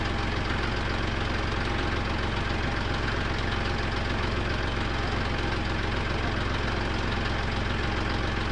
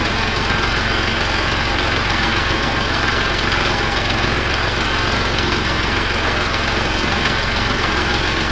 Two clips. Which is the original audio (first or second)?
first